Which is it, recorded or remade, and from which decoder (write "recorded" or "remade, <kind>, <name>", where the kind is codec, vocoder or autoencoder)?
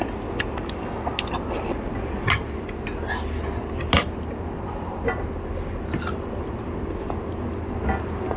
recorded